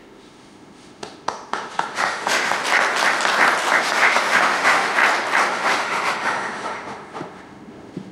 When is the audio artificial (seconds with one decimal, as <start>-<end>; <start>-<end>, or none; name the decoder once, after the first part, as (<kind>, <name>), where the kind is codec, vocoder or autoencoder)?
0.0-2.6 (autoencoder, DAC-VAE); 3.8-5.0; 5.5-8.1